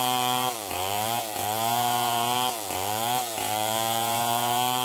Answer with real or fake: fake